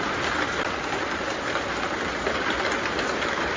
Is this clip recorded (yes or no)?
yes